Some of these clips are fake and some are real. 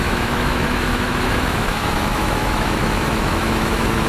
fake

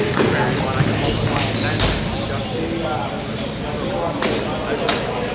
real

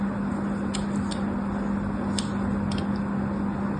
real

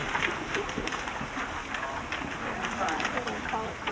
real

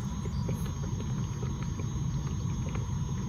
real